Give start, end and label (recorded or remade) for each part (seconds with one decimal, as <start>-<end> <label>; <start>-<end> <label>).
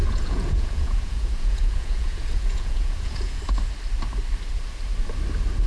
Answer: 0.0-3.4 remade; 3.4-5.7 recorded